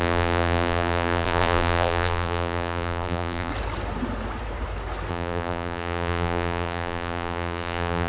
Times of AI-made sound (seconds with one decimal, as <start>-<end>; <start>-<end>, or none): 0.0-3.5; 5.1-8.1